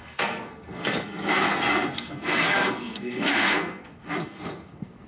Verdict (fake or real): fake